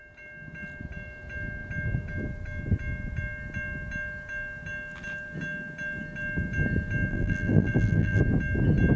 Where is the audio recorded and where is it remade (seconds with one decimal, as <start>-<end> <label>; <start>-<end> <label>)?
0.0-7.1 recorded; 7.1-8.2 remade; 8.2-9.0 recorded